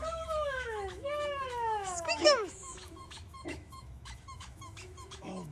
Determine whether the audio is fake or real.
fake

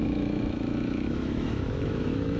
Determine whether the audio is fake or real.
fake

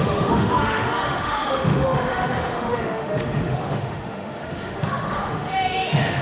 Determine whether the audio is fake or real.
fake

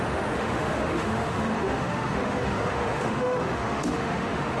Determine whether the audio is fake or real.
fake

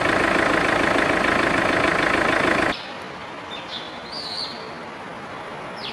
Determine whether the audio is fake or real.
real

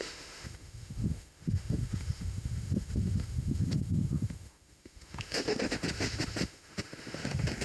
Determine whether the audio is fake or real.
fake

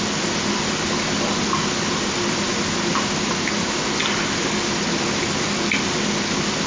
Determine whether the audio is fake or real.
real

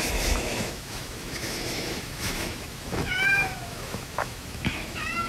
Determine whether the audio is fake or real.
fake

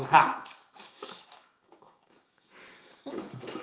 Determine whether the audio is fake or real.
fake